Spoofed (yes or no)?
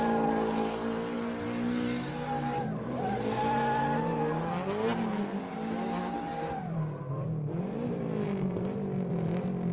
no